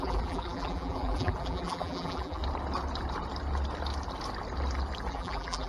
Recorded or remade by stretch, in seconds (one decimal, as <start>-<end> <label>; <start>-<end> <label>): 0.0-2.4 remade; 2.4-5.1 recorded; 5.1-5.7 remade